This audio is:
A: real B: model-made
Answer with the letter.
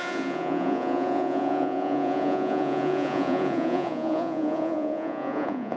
B